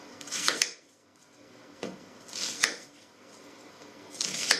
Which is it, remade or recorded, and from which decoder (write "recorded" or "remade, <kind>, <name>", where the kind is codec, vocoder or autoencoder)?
remade, codec, SNAC